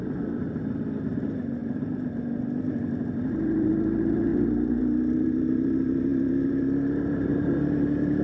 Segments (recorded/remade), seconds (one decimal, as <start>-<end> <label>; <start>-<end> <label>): 0.0-8.2 remade